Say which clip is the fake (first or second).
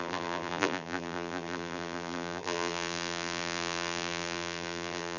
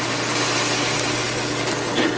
first